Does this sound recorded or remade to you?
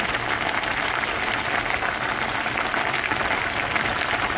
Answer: remade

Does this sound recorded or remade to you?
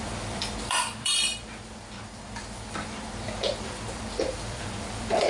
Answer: remade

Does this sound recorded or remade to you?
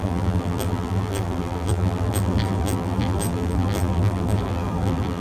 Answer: remade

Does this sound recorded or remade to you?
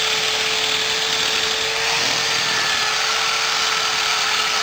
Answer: recorded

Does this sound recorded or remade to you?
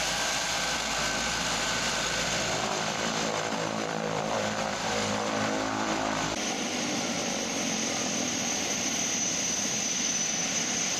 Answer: remade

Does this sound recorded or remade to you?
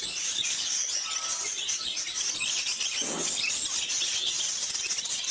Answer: recorded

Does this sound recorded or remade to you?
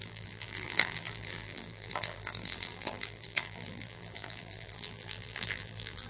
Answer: remade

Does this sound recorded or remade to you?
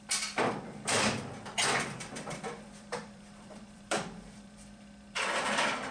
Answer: remade